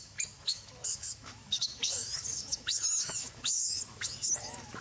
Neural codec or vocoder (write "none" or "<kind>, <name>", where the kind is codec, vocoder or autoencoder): autoencoder, DAC-VAE